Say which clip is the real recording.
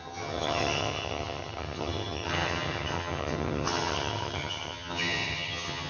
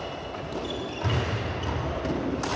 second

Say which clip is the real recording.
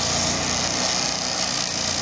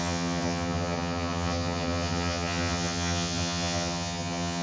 first